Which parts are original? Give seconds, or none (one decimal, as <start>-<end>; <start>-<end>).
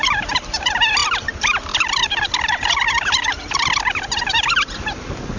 0.0-5.4